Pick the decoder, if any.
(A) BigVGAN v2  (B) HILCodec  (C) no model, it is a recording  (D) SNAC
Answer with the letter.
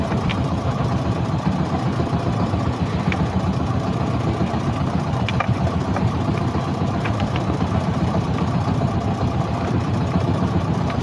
A